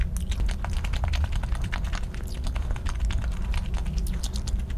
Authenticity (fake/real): real